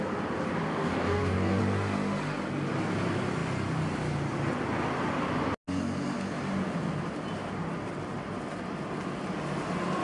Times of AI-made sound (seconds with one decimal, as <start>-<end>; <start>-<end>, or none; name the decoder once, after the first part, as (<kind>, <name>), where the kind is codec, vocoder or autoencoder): 0.7-1.6 (codec, DAC)